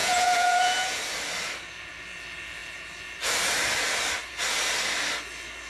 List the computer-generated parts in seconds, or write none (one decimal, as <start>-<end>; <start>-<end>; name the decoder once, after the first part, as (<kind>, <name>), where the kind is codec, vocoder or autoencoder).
0.0-1.0 (vocoder, Vocos)